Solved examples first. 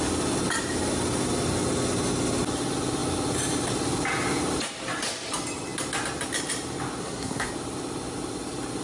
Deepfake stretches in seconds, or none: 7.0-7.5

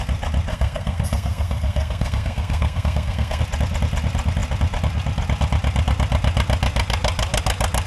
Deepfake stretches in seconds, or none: 0.5-3.4

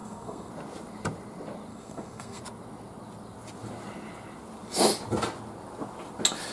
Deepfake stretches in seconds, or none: 0.0-0.5; 1.7-2.4

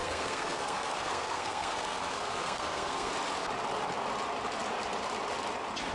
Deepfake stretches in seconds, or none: 0.0-3.1